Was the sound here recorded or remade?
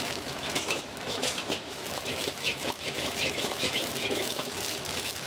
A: remade